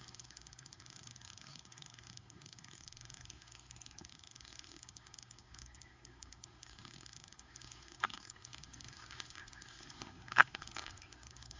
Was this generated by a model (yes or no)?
yes